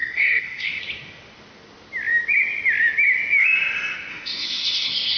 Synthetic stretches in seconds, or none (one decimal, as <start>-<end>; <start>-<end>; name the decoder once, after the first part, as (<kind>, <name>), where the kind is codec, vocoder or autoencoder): 0.0-0.8 (codec, SNAC); 4.1-5.2